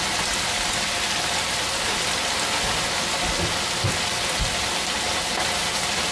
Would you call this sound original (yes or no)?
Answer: yes